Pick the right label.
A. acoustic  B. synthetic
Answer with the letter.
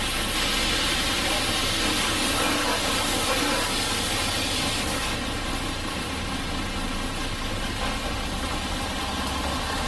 A